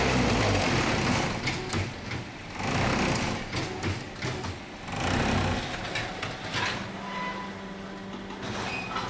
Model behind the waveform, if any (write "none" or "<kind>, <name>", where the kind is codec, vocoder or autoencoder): none